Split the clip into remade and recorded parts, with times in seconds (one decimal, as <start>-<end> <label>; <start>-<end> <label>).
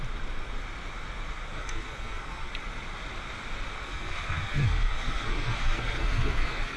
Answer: 0.0-1.5 recorded; 1.5-2.5 remade; 2.5-3.7 recorded; 3.7-6.8 remade